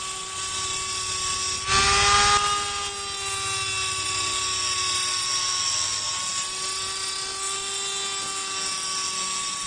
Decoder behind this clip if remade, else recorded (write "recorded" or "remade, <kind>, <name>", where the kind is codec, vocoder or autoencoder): recorded